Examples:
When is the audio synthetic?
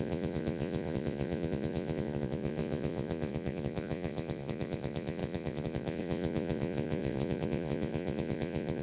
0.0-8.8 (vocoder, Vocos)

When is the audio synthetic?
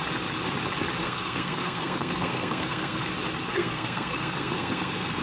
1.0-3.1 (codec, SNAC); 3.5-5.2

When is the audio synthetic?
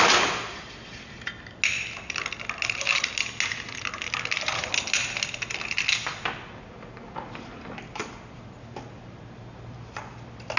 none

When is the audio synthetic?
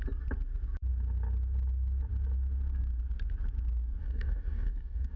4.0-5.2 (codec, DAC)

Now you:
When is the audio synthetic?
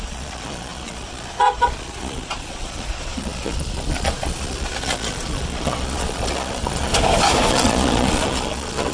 0.0-6.9 (vocoder, Vocos); 7.5-8.9